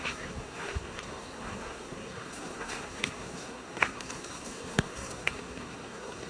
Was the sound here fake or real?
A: fake